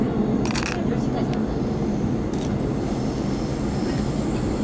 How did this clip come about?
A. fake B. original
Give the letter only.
B